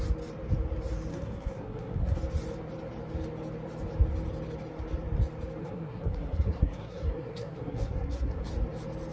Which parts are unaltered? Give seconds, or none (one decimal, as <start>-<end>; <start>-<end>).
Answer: 0.0-1.1; 2.2-5.6; 8.4-9.1